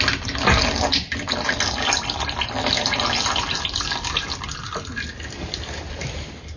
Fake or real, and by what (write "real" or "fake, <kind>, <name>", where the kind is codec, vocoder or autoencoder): real